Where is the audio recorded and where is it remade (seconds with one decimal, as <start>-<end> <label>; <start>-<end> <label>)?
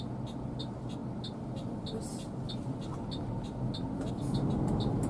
0.0-5.1 recorded